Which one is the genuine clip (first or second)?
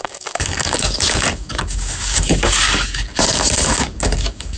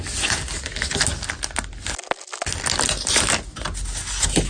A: second